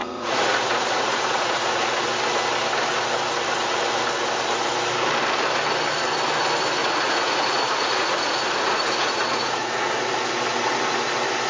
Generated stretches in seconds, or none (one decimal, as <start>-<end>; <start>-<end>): 0.0-1.9; 6.8-10.0